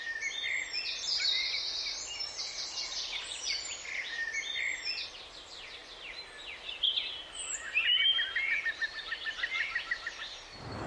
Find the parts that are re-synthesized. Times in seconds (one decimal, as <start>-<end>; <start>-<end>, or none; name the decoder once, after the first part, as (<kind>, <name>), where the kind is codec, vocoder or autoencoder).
none